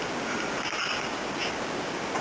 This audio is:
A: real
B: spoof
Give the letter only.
A